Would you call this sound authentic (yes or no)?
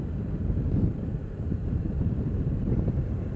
no